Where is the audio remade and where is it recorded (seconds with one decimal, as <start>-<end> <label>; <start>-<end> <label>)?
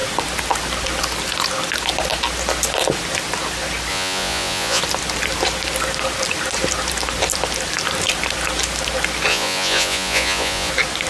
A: 0.0-3.9 recorded; 3.9-4.8 remade; 4.8-9.3 recorded; 9.3-10.7 remade; 10.7-11.1 recorded